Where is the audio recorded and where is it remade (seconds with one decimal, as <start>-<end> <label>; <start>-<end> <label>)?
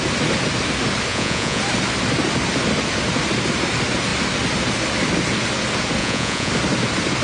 0.0-1.1 recorded; 1.1-1.6 remade; 1.6-6.0 recorded; 6.0-6.5 remade; 6.5-7.2 recorded